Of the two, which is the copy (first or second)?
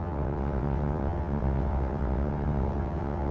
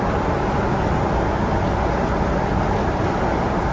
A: first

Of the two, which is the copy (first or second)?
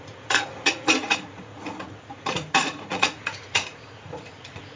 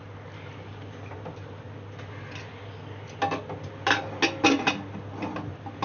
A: first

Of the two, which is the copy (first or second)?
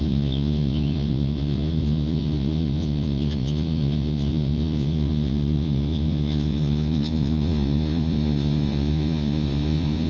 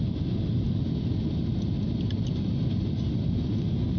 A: first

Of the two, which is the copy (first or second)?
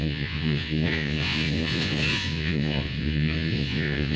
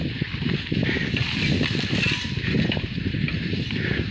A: first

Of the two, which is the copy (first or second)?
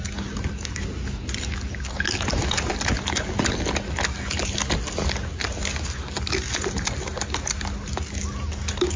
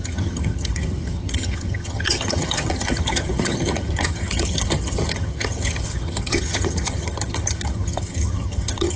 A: second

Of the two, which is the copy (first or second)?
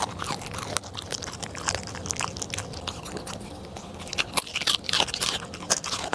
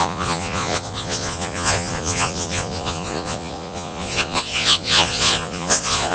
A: second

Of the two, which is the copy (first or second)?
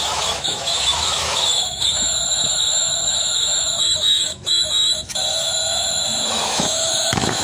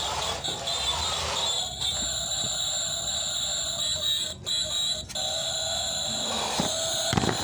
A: first